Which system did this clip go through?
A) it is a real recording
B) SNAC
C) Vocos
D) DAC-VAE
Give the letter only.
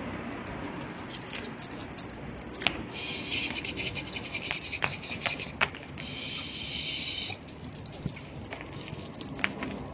A